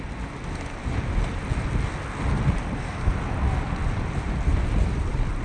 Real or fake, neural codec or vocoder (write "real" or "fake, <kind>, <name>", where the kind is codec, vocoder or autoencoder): real